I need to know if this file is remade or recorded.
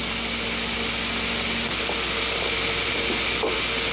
recorded